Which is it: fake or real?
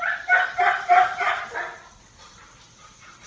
fake